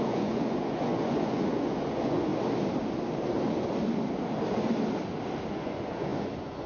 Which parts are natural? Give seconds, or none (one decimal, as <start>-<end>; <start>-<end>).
2.3-5.5